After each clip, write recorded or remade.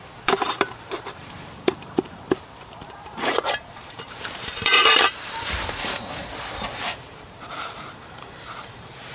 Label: remade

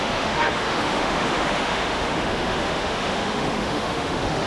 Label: remade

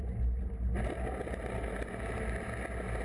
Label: recorded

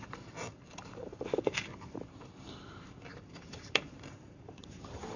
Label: remade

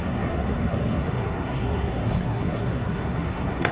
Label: remade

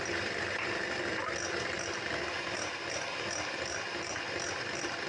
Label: recorded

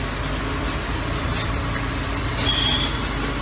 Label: recorded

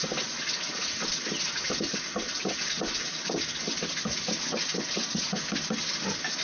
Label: recorded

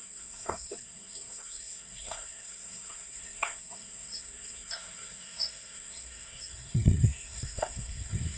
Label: remade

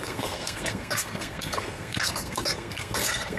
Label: remade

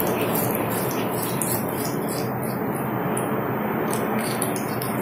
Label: recorded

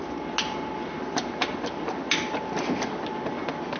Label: recorded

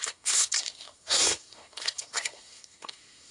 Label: remade